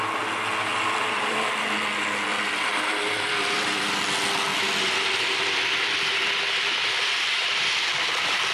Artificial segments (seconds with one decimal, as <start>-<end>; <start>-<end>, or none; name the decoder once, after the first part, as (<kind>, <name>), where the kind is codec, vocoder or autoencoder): 0.7-1.5 (vocoder, BigVGAN v2); 2.3-3.9; 4.5-8.5